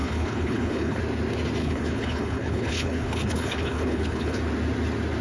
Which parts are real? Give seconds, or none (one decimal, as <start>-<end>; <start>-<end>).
1.0-1.6; 4.4-5.2